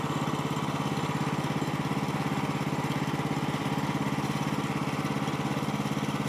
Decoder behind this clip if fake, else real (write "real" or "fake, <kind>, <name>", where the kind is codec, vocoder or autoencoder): real